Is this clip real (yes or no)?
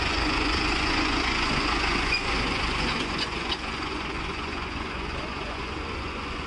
no